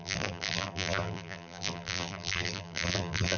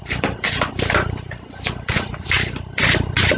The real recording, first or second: second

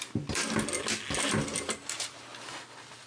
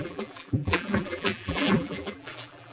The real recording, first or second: first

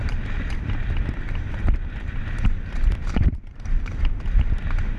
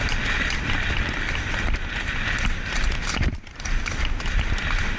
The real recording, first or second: second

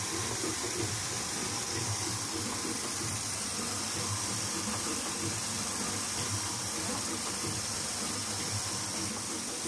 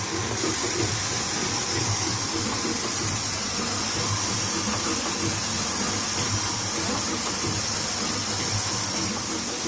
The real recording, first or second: second